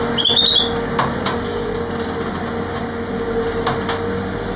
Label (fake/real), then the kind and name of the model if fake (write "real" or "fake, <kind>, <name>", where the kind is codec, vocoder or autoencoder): real